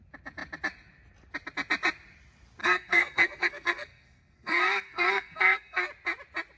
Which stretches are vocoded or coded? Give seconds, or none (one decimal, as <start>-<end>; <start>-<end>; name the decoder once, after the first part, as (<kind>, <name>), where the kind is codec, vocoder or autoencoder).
2.6-5.9 (codec, SNAC)